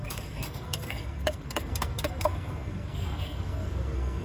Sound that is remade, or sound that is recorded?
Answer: remade